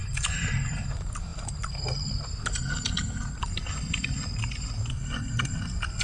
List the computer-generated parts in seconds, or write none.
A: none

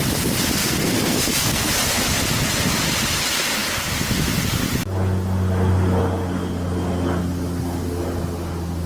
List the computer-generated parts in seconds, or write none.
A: 0.6-1.7 (codec, SNAC)

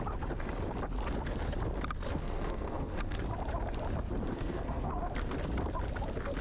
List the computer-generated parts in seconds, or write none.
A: 2.1-3.2 (codec, SNAC); 4.3-4.9